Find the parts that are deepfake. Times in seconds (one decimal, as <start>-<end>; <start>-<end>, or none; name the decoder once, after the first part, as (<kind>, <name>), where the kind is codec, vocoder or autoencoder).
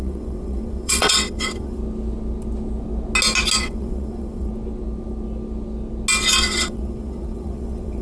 0.0-1.8 (vocoder, WaveNeXt); 3.6-4.5; 6.4-8.0